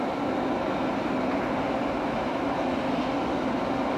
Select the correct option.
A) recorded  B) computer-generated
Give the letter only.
A